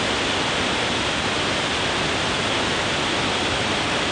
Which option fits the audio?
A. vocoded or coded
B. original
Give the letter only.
B